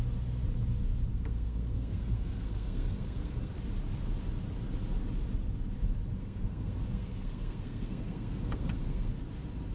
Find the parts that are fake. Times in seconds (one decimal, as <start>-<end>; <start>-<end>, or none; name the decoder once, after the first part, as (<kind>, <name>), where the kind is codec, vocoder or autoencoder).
1.1-3.5 (codec, SNAC); 6.2-9.1